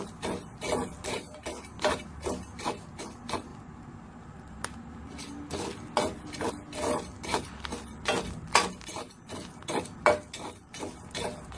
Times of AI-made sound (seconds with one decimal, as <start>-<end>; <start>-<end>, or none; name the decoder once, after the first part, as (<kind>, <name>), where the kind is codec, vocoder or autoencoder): none